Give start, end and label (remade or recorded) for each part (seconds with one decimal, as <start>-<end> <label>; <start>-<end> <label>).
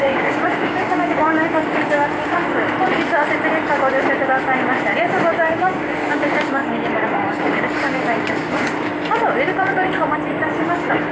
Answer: 0.0-2.4 remade; 2.4-5.5 recorded; 5.5-8.9 remade; 8.9-10.6 recorded; 10.6-11.1 remade